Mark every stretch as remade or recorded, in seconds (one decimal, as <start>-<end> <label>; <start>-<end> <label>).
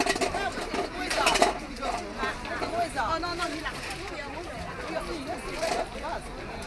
0.0-3.3 recorded; 3.3-4.1 remade; 4.1-6.7 recorded